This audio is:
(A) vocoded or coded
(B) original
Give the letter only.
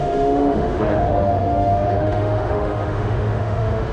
A